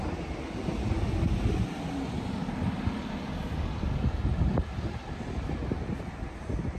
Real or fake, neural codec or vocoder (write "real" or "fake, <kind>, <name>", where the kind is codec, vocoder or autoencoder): real